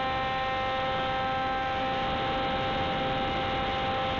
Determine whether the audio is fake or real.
real